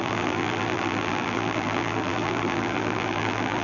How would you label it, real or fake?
fake